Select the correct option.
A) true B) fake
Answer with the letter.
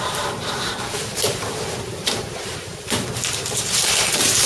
B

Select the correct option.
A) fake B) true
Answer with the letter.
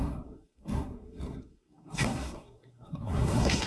A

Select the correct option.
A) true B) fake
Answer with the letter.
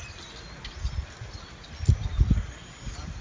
A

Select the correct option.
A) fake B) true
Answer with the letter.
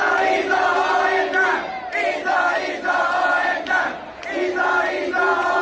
B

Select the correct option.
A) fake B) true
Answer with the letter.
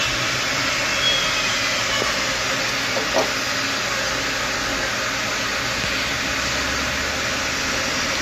B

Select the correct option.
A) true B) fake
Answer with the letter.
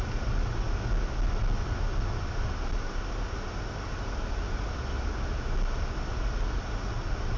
A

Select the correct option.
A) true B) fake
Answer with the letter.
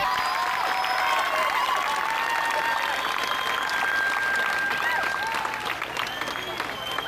A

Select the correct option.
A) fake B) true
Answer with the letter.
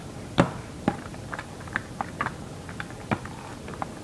B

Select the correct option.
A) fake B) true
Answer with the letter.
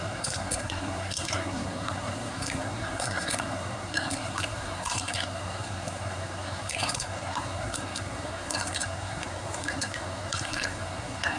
A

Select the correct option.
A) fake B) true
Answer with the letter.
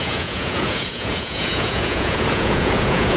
A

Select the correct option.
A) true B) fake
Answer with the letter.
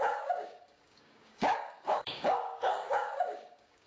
B